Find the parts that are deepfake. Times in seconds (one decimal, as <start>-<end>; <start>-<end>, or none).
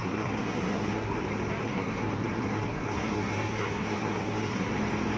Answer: 0.0-1.2; 1.6-4.7